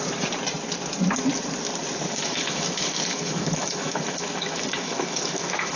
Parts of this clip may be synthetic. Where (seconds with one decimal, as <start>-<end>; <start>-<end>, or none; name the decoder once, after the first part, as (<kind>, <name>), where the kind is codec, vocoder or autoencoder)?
2.1-5.8 (autoencoder, DAC-VAE)